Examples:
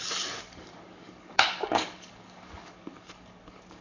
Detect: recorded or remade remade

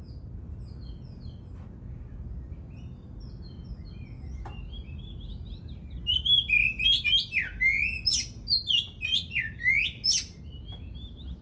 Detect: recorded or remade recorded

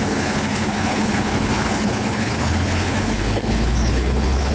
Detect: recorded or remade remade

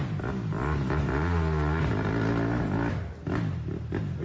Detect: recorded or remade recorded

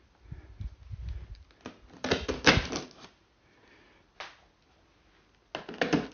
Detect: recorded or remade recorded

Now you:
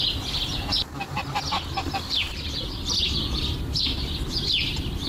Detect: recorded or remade recorded